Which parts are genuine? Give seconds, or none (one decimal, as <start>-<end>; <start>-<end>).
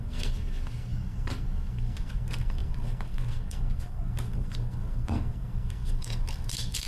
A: none